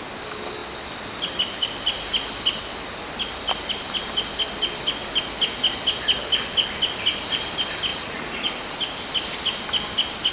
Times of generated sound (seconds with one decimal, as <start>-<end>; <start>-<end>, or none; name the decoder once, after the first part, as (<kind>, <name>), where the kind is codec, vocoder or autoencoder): 7.9-8.5 (vocoder, Vocos)